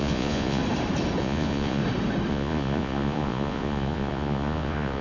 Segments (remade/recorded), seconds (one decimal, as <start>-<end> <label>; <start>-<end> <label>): 0.0-0.6 remade; 0.6-1.2 recorded; 1.2-1.8 remade; 1.8-2.3 recorded; 2.3-5.0 remade